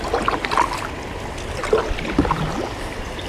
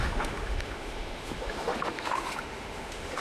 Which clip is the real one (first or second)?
first